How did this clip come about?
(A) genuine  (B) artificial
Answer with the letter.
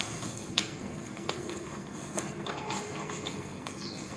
B